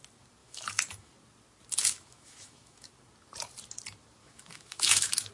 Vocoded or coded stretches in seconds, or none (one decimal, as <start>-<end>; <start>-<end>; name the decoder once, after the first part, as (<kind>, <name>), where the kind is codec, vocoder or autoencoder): 0.4-1.1 (autoencoder, DAC-VAE); 1.8-2.9; 4.2-5.3